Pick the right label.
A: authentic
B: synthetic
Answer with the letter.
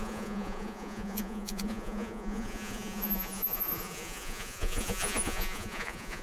B